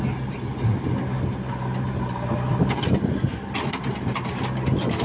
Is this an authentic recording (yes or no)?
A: yes